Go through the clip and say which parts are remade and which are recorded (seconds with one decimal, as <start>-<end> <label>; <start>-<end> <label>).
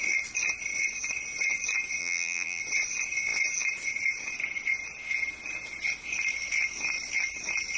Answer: 0.0-2.0 recorded; 2.0-2.6 remade; 2.6-7.8 recorded